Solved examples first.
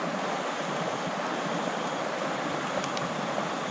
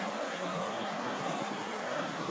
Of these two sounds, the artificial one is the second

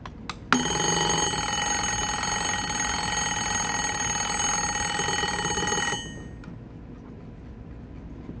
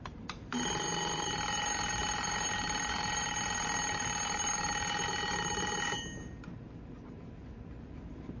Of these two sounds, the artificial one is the second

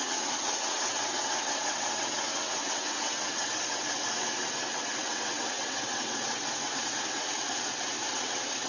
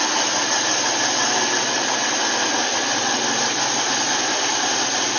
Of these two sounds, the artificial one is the first